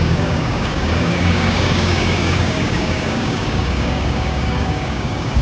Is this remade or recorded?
remade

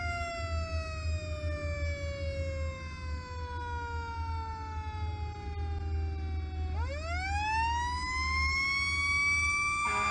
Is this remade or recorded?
recorded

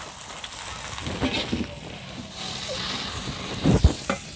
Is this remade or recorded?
recorded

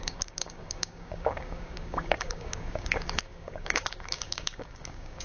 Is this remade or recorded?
remade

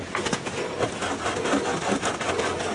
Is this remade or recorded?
recorded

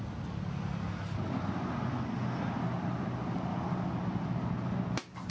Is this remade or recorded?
recorded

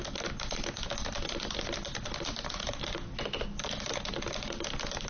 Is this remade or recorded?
recorded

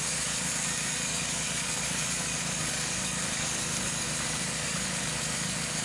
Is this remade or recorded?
remade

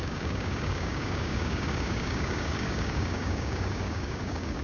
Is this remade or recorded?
remade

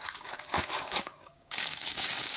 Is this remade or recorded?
remade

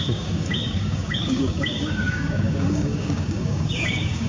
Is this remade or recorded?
remade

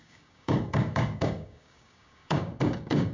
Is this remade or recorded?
remade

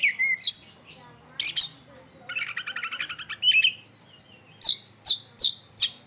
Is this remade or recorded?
recorded